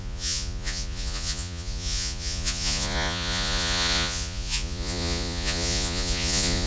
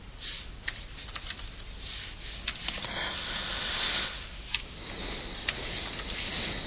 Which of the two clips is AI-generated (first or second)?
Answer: first